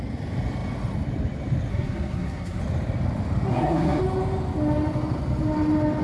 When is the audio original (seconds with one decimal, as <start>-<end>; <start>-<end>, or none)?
0.0-1.7; 2.6-3.5; 4.0-6.0